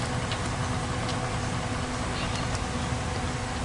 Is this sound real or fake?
real